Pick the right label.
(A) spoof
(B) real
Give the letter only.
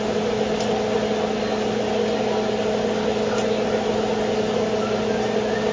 B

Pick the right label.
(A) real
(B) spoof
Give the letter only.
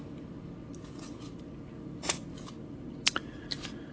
A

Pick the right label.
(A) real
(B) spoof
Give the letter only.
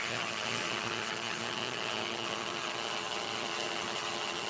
B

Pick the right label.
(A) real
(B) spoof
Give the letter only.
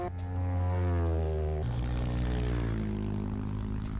A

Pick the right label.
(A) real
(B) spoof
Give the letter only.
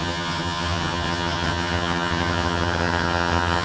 B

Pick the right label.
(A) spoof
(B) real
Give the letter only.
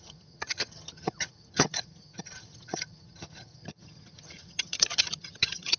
A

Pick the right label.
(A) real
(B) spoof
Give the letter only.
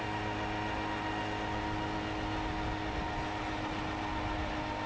A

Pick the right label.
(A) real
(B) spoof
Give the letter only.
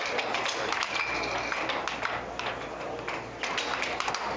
A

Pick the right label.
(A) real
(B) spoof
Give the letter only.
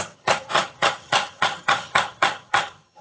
B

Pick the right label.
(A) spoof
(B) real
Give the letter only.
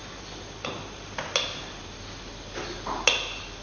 B